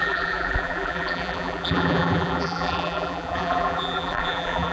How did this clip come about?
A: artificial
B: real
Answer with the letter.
A